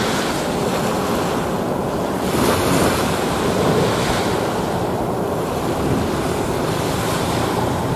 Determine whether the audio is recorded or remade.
recorded